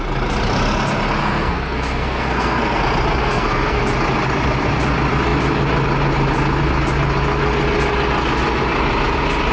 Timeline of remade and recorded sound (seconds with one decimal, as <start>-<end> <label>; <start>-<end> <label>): 0.0-1.2 recorded; 1.2-2.8 remade; 2.8-3.2 recorded; 3.2-3.8 remade; 3.8-9.5 recorded